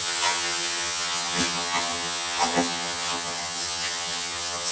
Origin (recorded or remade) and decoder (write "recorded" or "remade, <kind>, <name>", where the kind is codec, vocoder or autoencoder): remade, vocoder, HiFi-GAN